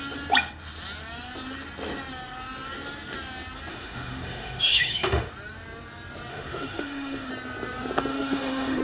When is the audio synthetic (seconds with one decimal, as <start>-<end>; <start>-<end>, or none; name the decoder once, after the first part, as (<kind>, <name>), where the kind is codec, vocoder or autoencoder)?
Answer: 3.7-5.3 (autoencoder, DAC-VAE); 6.3-7.3; 8.1-8.8